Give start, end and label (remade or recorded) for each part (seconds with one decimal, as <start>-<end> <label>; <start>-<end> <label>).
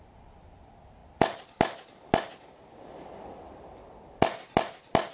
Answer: 0.0-5.1 recorded